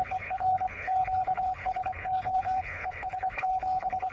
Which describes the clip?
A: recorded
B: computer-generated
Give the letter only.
B